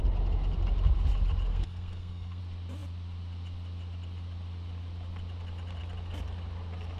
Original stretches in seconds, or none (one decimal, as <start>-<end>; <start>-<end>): 0.0-1.5; 2.4-7.0